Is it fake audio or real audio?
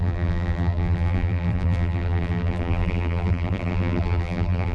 fake